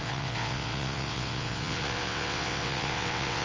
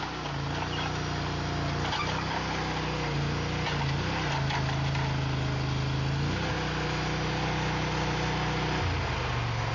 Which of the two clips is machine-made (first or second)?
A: first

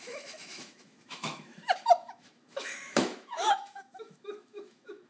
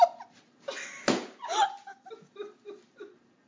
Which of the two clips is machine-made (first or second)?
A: first